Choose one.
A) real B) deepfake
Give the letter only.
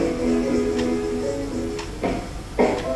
A